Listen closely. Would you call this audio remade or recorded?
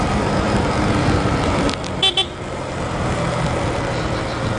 recorded